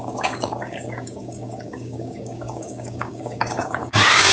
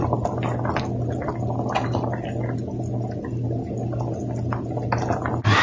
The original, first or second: second